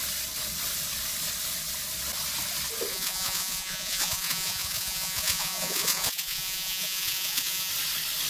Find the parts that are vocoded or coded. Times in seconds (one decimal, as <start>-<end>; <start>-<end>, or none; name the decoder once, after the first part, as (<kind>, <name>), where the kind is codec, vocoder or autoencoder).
2.9-7.7 (vocoder, Vocos)